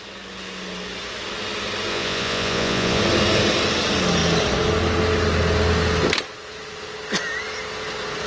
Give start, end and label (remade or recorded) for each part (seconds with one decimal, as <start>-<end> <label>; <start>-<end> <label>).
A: 0.0-1.9 recorded; 1.9-3.0 remade; 3.0-8.3 recorded